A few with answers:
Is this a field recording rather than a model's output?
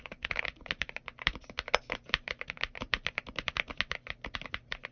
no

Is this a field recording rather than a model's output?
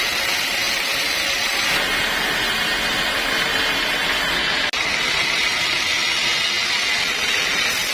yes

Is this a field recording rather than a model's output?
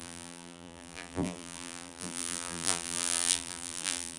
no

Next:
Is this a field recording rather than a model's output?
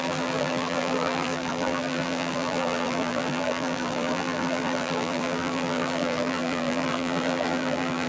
no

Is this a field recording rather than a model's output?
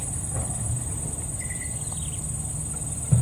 yes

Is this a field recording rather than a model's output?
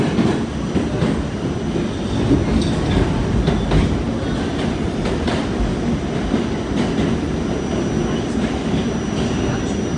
yes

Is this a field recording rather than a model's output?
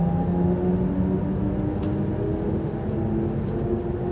yes